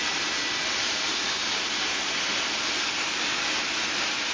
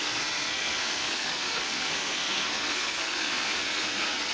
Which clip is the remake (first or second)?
second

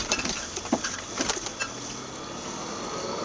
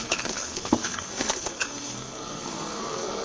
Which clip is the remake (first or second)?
second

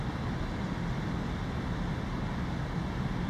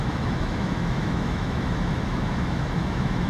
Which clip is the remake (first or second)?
second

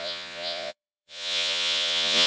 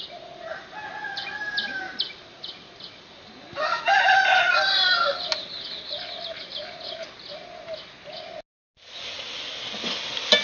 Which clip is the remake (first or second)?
first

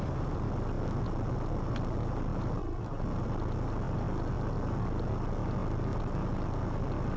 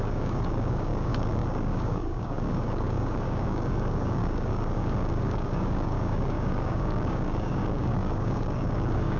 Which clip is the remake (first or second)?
second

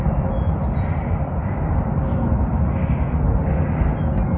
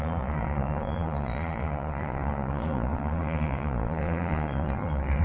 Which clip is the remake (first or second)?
second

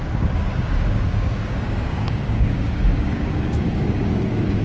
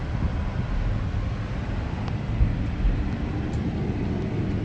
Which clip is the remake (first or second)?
first